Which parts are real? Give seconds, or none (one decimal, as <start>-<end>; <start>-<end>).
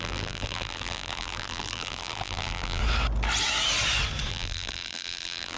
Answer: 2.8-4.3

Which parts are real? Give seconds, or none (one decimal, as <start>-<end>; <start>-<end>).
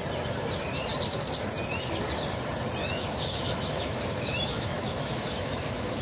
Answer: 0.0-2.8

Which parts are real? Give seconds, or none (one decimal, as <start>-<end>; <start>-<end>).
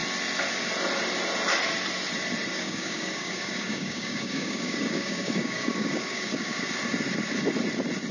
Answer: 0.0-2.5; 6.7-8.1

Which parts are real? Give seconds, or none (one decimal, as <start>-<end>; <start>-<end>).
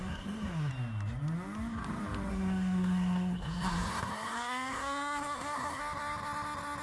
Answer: 0.7-2.3; 5.8-6.8